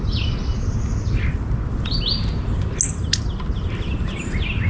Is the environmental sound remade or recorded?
recorded